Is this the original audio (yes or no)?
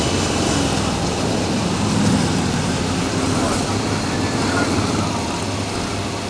yes